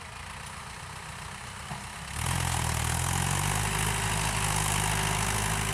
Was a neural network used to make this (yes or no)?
no